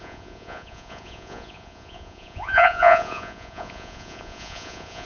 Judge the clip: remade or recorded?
remade